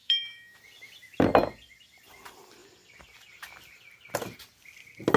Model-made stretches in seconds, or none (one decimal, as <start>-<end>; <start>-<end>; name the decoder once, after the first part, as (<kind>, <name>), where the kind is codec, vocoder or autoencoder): 0.0-0.6 (autoencoder, DAC-VAE)